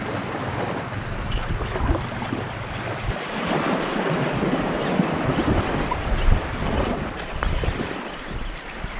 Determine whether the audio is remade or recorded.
remade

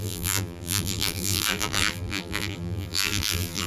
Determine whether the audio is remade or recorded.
remade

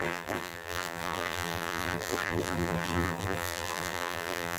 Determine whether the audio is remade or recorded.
remade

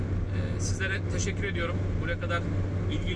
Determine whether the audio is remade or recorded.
recorded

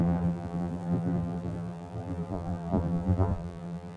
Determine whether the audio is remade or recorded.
remade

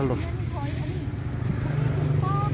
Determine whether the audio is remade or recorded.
recorded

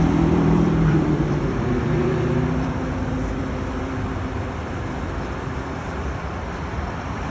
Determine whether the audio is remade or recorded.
remade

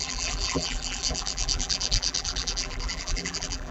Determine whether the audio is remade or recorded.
remade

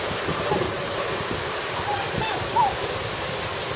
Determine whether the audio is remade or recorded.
remade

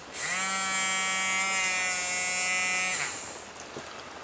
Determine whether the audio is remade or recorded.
recorded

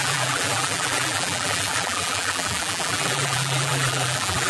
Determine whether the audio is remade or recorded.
remade